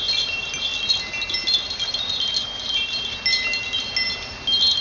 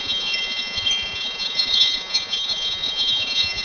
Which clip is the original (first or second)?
first